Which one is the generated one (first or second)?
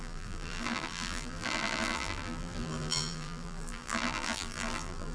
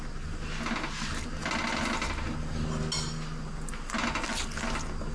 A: first